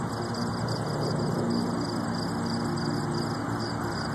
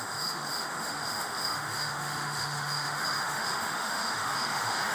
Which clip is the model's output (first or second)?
second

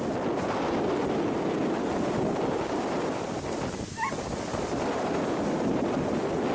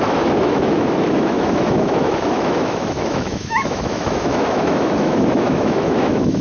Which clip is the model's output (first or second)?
second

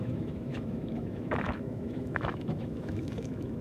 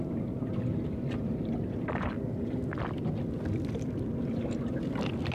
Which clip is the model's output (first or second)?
first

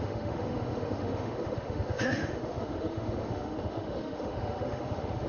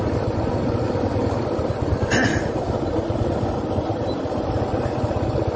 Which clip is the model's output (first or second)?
first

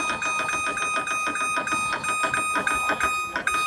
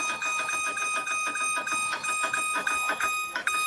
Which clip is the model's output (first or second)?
second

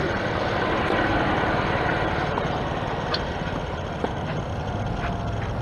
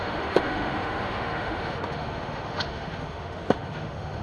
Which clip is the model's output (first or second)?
second